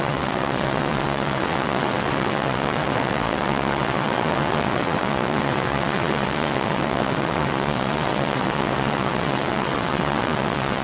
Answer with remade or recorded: remade